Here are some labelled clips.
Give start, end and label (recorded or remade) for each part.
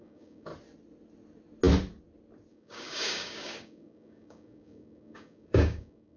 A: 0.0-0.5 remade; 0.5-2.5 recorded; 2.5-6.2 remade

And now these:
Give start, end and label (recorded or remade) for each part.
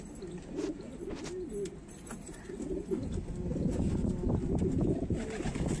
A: 0.0-5.8 recorded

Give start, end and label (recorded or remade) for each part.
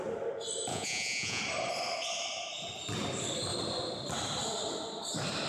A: 0.0-0.7 recorded; 0.7-1.4 remade; 1.4-5.5 recorded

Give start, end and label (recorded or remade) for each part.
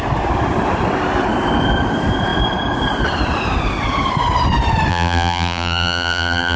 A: 0.0-4.9 recorded; 4.9-6.6 remade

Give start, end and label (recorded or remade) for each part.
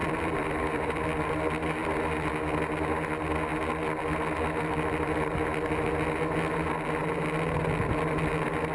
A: 0.0-1.3 remade; 1.3-1.8 recorded; 1.8-2.3 remade; 2.3-8.7 recorded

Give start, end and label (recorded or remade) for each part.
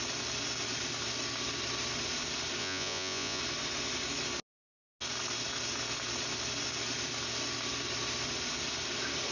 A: 0.0-2.6 recorded; 2.6-3.4 remade; 3.4-9.3 recorded